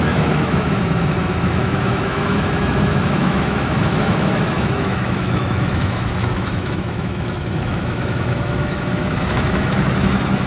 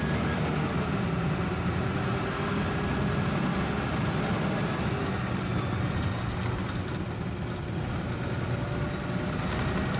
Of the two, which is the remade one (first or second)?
first